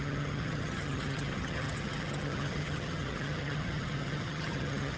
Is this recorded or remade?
remade